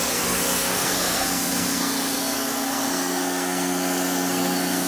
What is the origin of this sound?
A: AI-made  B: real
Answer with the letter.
A